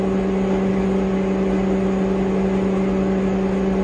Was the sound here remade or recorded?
recorded